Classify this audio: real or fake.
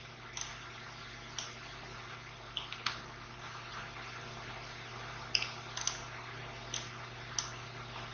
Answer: real